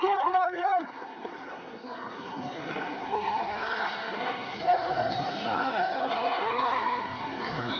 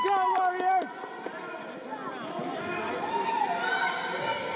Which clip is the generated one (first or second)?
first